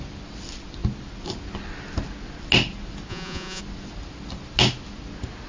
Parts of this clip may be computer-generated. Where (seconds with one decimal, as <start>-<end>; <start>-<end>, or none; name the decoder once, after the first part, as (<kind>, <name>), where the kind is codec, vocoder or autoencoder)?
3.1-3.6 (vocoder, Vocos)